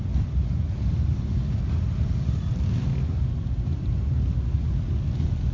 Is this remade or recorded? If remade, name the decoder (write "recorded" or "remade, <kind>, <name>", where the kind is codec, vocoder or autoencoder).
recorded